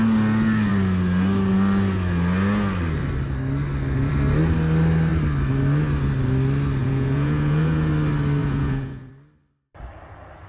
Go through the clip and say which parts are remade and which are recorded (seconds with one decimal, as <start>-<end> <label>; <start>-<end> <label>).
0.0-6.8 recorded; 6.8-7.9 remade; 7.9-8.4 recorded; 8.4-9.1 remade; 9.1-10.5 recorded